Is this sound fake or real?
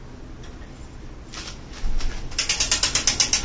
real